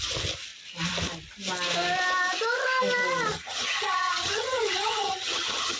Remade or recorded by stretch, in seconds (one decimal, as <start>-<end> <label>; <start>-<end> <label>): 0.0-3.3 recorded; 3.3-5.8 remade